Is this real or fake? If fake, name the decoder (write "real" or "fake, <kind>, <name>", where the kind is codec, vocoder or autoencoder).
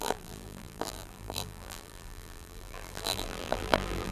fake, vocoder, BigVGAN v2